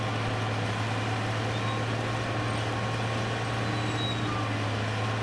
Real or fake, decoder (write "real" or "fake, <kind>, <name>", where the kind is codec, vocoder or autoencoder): real